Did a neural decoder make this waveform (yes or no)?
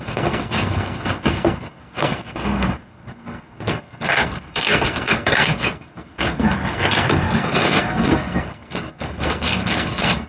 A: yes